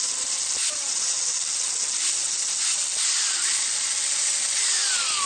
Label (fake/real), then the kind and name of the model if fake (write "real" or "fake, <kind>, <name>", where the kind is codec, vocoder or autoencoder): real